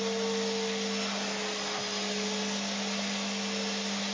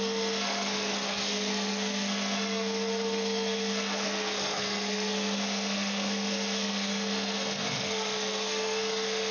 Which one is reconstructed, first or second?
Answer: second